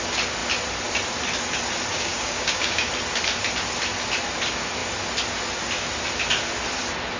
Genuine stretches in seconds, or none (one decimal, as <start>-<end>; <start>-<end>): 0.0-1.9; 2.9-7.2